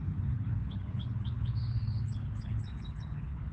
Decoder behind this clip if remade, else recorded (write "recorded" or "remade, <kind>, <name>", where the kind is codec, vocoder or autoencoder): remade, codec, HILCodec